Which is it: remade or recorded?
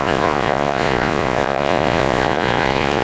remade